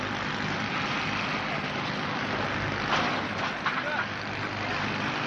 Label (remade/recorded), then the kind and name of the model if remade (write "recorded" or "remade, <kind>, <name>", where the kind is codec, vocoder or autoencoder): recorded